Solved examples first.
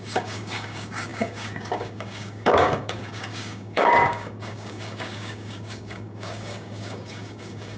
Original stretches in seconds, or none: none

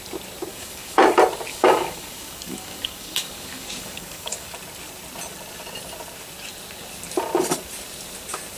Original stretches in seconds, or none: 0.0-0.5; 1.0-1.5; 4.5-8.6

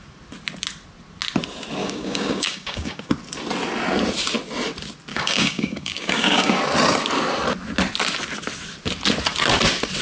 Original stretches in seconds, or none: 0.0-1.8; 3.1-5.1; 6.6-10.0

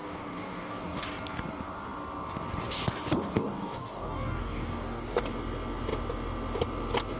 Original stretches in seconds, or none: 1.0-3.3; 5.2-7.2

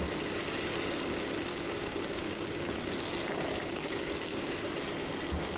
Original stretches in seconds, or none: 0.0-1.5; 2.9-3.6; 4.7-5.6

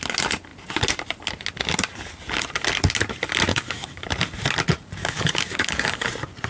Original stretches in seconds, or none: 0.0-3.5; 4.0-5.0; 6.1-6.5

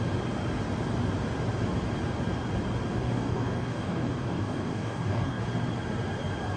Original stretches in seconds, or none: 0.0-2.9; 5.4-6.6